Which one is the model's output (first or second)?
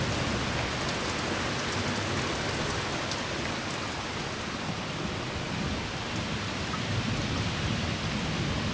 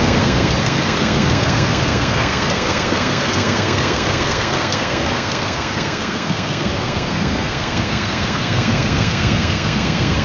second